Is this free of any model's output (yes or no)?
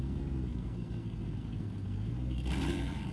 no